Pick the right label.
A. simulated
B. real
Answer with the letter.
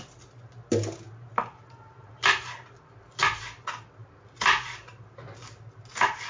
B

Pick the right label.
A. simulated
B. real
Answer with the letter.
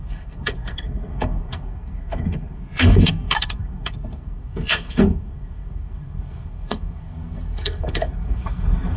A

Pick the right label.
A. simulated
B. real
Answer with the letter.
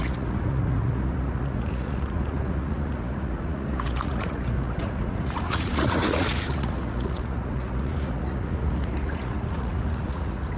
A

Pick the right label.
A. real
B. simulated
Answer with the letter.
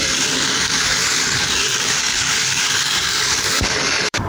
B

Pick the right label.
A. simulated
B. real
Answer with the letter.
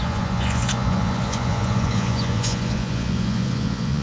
A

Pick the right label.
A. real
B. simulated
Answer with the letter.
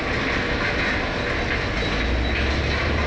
A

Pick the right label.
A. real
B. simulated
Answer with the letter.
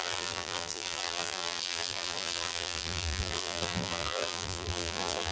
B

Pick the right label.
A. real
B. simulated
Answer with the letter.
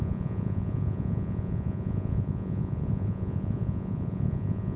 B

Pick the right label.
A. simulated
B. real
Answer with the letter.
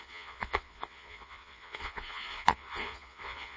A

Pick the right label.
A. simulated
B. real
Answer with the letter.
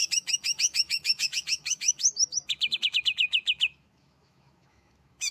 A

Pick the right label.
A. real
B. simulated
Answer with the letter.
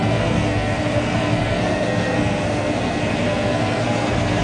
B